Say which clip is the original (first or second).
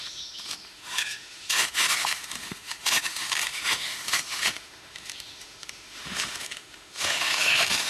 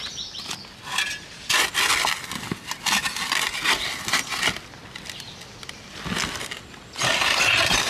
second